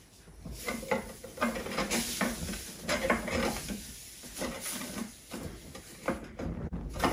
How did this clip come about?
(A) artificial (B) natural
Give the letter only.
B